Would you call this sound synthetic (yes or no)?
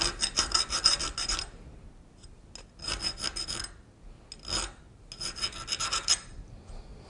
no